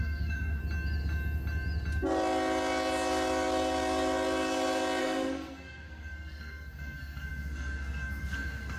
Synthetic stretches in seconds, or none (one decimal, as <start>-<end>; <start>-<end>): 0.0-0.6; 5.0-8.8